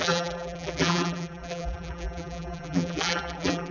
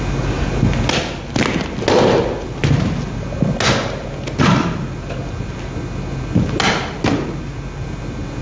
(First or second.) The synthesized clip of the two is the first